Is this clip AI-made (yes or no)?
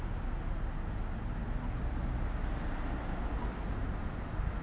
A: no